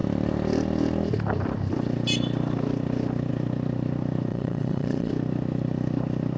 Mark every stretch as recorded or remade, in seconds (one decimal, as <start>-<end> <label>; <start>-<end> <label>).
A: 0.0-4.3 recorded; 4.3-5.1 remade; 5.1-6.4 recorded